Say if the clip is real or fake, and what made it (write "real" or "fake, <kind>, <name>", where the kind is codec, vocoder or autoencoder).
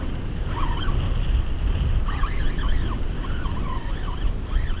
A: real